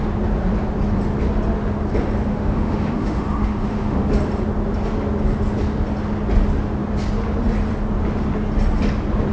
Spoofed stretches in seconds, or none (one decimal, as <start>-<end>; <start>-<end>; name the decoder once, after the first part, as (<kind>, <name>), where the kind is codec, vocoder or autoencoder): 2.3-4.1 (autoencoder, DAC-VAE)